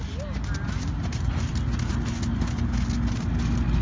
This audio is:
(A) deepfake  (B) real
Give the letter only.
B